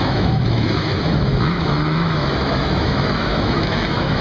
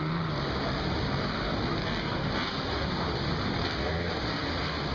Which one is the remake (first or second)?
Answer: first